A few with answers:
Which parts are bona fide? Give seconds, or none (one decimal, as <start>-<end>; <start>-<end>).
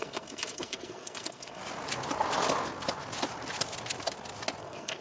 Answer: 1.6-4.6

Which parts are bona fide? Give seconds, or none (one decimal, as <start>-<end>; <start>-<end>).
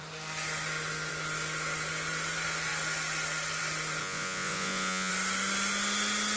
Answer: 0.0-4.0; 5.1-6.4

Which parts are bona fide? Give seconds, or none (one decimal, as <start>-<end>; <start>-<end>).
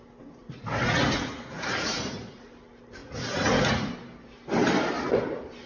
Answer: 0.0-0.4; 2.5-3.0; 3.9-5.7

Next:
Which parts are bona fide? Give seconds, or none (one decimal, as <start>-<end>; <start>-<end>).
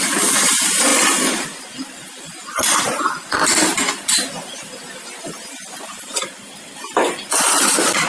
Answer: 0.0-8.1